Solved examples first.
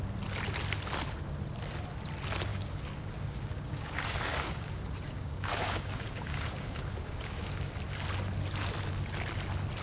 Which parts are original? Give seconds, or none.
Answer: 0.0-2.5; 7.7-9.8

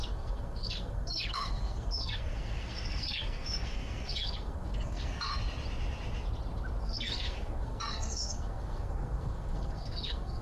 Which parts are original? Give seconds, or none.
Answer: 5.3-6.8